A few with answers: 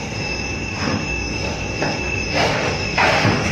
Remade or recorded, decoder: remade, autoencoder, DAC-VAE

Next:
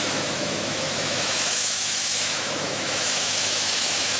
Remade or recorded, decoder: remade, autoencoder, DAC-VAE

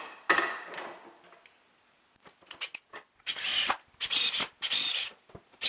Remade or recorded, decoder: recorded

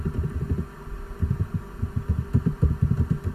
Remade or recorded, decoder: recorded